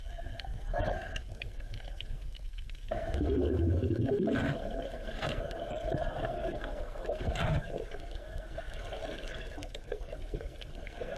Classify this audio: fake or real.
fake